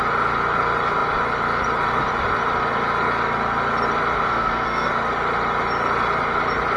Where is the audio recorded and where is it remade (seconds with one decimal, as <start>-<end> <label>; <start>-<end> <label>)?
0.0-4.3 recorded; 4.3-4.9 remade; 4.9-6.8 recorded